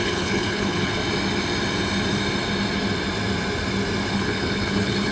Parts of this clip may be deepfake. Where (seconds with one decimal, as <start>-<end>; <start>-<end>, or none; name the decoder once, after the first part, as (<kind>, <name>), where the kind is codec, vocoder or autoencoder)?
0.0-1.0 (codec, HILCodec); 4.1-5.1